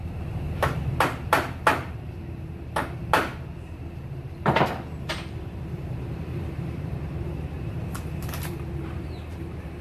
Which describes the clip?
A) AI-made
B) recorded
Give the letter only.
A